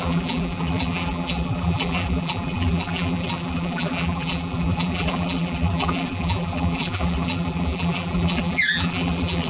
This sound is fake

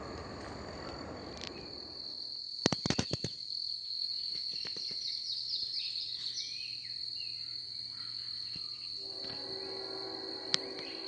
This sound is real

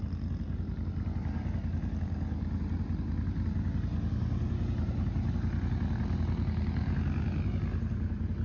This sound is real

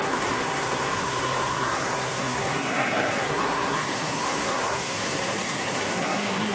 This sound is fake